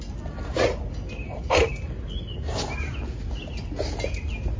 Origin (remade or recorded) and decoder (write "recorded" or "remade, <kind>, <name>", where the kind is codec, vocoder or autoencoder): recorded